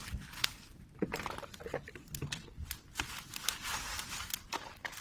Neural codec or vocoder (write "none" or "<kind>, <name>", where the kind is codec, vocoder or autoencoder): none